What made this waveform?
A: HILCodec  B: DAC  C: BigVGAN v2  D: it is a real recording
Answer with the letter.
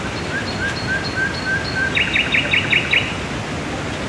D